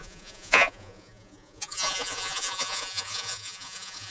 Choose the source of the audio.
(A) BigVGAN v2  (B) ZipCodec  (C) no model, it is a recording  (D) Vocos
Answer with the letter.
D